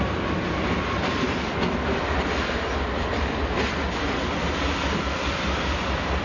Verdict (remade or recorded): remade